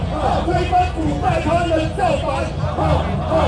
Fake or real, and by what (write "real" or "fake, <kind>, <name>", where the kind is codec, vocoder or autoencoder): real